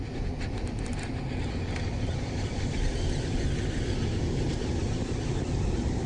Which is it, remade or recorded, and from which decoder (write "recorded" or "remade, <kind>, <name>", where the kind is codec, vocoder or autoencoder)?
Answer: recorded